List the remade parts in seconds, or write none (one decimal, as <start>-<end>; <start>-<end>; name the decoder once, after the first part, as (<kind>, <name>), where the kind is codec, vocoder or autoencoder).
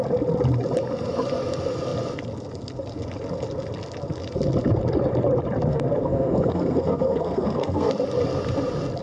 5.7-7.9 (codec, SNAC)